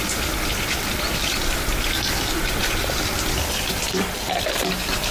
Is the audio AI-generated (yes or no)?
no